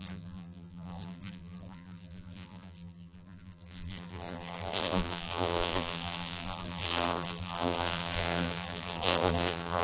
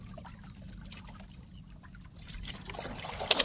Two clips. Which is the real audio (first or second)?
second